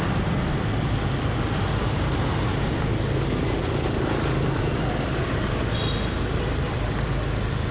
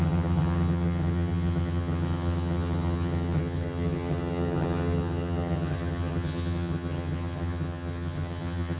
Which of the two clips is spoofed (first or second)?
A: second